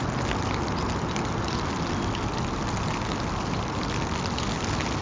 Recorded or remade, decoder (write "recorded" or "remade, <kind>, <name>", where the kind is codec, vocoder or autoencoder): recorded